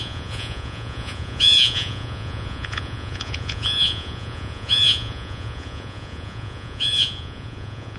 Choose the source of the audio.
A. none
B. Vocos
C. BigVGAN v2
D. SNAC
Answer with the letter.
B